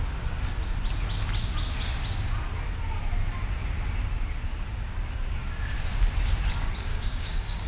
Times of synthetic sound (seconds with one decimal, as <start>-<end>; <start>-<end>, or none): 6.9-7.7